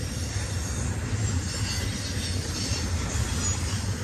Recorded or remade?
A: recorded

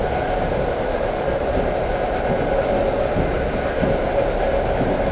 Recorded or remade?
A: recorded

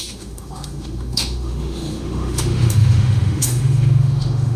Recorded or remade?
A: remade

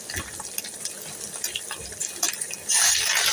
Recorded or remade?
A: recorded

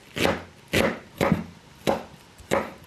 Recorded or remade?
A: recorded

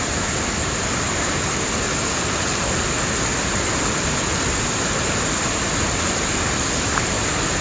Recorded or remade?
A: recorded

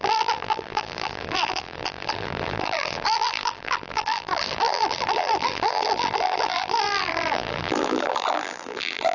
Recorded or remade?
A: remade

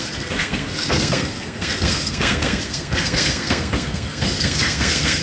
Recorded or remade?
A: remade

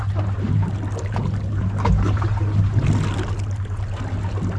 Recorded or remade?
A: recorded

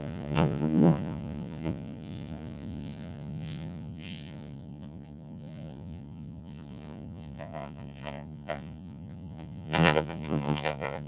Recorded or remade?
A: remade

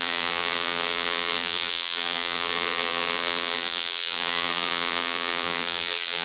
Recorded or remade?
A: remade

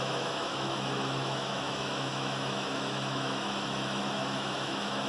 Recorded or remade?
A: remade